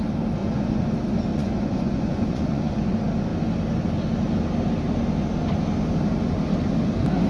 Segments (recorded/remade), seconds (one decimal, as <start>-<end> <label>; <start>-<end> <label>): 0.0-0.4 recorded; 0.4-0.9 remade; 0.9-1.3 recorded; 1.3-2.9 remade; 2.9-7.3 recorded